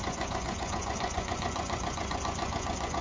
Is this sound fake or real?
fake